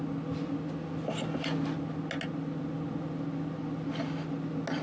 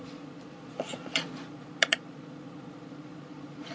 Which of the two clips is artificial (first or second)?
second